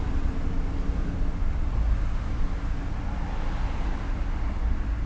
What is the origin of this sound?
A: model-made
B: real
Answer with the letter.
B